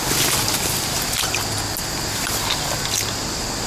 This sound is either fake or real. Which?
real